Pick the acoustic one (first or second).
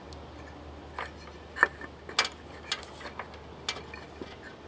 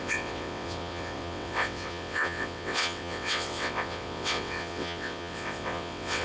first